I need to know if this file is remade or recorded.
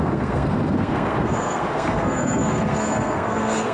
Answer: remade